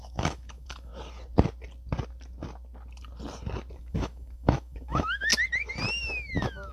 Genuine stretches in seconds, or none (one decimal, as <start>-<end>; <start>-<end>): 0.9-3.7; 5.3-6.0